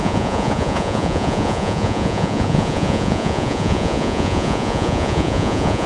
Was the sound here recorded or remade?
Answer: remade